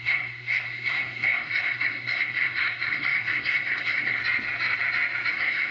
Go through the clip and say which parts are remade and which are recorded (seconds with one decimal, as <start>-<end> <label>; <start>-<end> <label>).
0.0-4.2 remade; 4.2-5.3 recorded; 5.3-5.7 remade